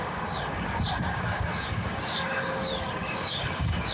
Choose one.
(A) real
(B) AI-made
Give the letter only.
B